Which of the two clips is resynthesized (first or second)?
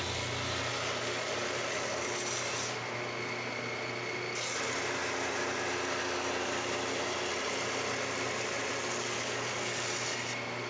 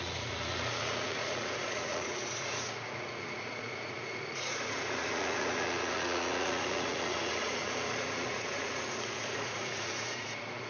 second